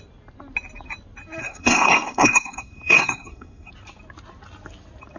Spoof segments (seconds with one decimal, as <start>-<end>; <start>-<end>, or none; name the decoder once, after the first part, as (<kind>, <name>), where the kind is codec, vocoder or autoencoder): 1.4-3.7 (codec, SNAC)